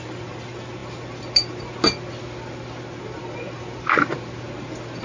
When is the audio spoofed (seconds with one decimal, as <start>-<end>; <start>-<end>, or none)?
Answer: none